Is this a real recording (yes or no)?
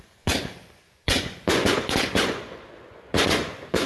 no